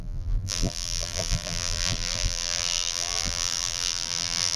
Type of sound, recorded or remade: remade